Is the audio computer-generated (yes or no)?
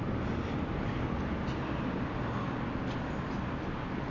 no